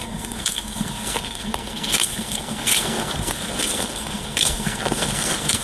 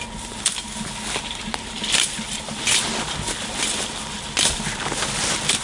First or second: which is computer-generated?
first